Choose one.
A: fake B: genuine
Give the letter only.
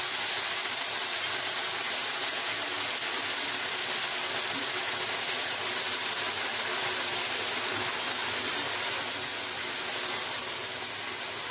B